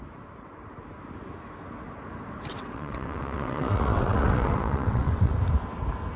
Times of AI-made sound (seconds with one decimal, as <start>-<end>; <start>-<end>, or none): 2.5-5.3